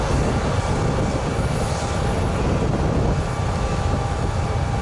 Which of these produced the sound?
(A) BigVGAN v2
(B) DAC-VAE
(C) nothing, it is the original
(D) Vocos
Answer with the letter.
C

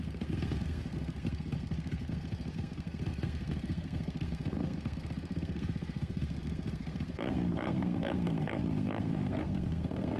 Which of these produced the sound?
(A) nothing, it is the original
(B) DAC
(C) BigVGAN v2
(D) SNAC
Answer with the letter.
D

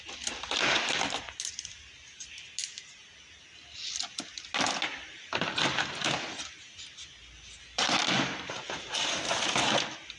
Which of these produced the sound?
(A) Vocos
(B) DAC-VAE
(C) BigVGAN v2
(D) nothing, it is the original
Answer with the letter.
D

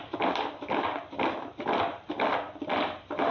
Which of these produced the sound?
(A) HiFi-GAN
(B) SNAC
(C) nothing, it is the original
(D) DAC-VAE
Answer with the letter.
C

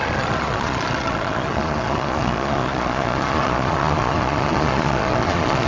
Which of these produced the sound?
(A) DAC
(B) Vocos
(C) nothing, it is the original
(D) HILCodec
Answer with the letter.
B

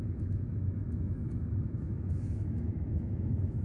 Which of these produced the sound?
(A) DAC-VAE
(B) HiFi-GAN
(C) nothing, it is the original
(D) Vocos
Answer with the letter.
A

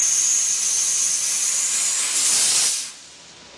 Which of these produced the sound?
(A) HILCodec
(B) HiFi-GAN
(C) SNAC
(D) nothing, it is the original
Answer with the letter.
D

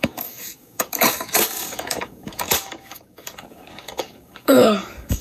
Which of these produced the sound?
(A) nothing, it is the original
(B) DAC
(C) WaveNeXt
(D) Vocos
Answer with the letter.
B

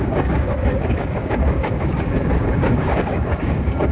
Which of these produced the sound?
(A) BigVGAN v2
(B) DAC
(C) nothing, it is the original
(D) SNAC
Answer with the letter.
B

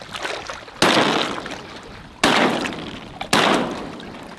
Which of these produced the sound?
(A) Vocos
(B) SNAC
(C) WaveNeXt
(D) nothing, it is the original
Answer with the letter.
D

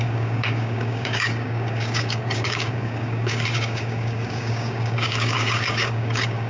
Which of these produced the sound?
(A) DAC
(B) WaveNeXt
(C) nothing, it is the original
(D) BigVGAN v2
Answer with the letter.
A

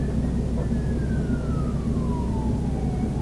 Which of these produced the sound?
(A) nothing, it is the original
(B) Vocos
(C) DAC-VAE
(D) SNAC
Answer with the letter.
A